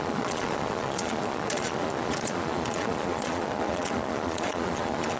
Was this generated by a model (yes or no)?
yes